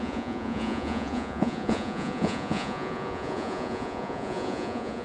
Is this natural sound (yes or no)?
no